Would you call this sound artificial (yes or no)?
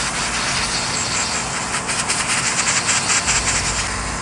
no